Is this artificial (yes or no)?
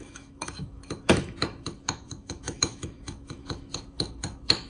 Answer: yes